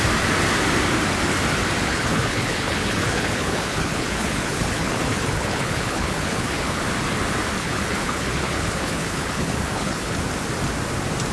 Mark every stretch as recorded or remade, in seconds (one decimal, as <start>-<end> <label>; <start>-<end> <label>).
0.0-1.8 recorded; 1.8-6.8 remade; 6.8-7.6 recorded; 7.6-10.2 remade; 10.2-11.3 recorded